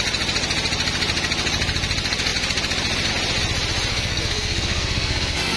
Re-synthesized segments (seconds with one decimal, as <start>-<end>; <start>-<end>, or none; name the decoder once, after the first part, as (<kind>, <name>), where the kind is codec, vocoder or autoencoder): 3.9-5.6 (codec, SNAC)